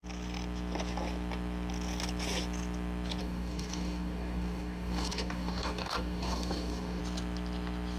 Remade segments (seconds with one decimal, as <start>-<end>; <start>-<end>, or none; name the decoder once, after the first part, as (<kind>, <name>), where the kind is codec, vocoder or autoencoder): 3.2-7.0 (codec, DAC)